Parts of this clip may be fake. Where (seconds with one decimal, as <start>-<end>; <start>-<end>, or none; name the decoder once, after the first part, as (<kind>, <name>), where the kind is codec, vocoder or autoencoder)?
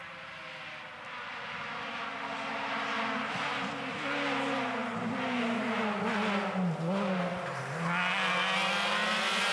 none